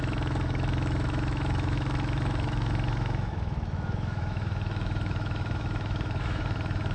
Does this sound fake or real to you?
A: fake